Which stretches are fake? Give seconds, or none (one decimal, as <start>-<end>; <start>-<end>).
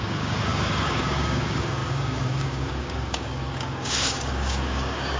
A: 0.0-5.2